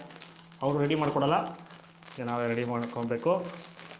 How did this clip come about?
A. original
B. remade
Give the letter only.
B